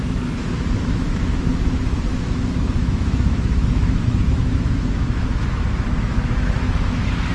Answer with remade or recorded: remade